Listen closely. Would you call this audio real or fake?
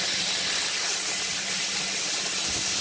real